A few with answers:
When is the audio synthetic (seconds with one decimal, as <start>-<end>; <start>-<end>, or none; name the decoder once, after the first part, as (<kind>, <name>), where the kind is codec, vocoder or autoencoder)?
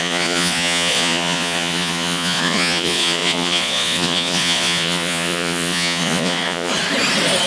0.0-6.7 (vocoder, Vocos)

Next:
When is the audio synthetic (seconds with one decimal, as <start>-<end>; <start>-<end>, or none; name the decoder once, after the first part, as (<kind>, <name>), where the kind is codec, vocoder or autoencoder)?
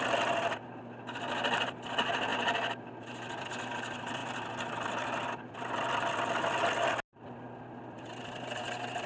none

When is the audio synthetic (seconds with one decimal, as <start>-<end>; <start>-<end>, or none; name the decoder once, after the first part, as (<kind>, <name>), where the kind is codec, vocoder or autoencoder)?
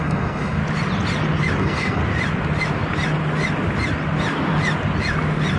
0.0-0.6 (codec, SNAC); 1.6-2.0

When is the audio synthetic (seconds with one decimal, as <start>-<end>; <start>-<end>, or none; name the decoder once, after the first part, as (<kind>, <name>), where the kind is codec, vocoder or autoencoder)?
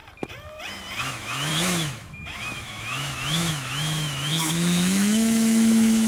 1.1-6.1 (autoencoder, DAC-VAE)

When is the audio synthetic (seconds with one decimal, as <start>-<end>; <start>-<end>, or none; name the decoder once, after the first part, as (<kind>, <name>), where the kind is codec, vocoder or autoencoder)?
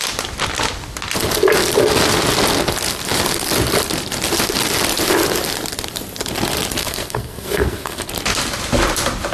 6.8-8.1 (codec, SNAC)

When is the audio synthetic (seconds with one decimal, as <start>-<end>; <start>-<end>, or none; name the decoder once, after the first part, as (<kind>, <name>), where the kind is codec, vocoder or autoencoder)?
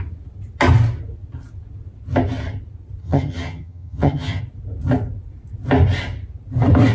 3.0-4.4 (vocoder, HiFi-GAN)